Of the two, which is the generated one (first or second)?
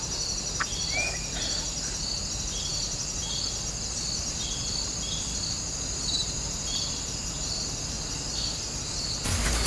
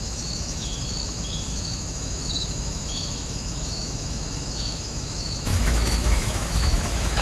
second